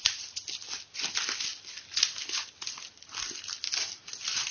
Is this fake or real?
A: real